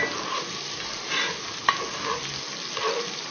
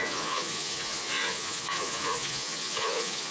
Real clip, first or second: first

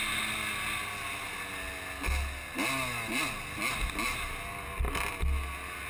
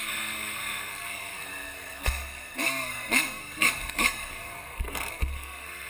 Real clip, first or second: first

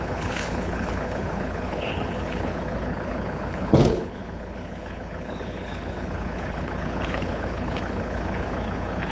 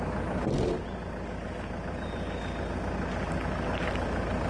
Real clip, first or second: second